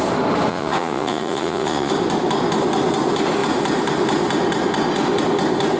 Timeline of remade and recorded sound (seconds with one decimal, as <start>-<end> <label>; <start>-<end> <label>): 0.0-0.5 recorded; 0.5-1.9 remade; 1.9-5.8 recorded